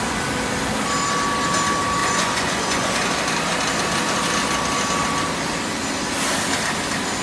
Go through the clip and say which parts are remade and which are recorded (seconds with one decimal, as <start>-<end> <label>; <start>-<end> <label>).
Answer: 0.0-2.0 recorded; 2.0-3.1 remade; 3.1-7.2 recorded